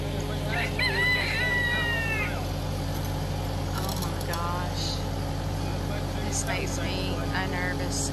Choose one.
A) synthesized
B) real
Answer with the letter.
B